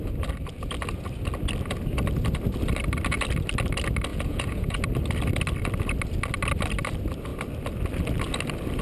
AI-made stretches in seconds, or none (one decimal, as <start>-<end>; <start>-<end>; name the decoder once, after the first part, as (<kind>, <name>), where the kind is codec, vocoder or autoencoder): 4.1-4.8 (vocoder, Vocos)

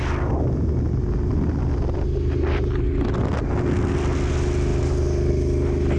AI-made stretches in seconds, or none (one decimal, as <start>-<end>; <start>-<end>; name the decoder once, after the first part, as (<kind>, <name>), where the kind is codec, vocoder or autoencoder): none

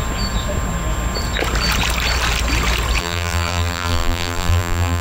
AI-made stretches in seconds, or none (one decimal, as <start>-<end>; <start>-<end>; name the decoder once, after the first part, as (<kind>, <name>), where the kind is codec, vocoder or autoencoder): 3.0-5.0 (vocoder, BigVGAN v2)

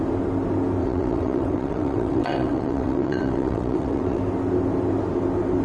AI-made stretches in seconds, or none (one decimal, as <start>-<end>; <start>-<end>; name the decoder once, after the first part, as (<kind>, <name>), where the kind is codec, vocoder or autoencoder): 0.8-4.2 (vocoder, WaveNeXt)

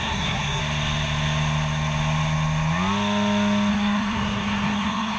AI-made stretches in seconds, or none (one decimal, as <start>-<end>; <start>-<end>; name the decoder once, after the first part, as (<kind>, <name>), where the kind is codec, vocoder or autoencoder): 0.0-0.6 (codec, SNAC); 3.7-5.2

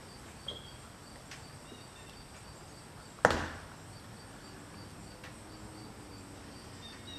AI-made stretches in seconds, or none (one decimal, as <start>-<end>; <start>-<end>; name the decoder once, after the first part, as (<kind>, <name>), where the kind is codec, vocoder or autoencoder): 1.0-1.6 (vocoder, BigVGAN v2); 5.8-6.3